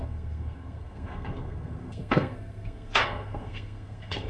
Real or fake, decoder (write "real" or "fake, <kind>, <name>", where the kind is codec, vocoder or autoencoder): fake, codec, SNAC